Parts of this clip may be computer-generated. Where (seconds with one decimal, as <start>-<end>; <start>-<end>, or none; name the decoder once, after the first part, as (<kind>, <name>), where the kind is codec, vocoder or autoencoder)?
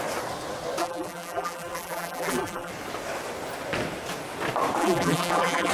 0.8-2.7 (vocoder, BigVGAN v2); 4.8-5.7